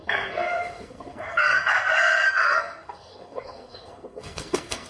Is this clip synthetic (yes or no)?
yes